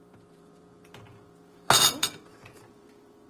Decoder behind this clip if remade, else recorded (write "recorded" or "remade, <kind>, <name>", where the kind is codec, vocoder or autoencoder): remade, vocoder, Vocos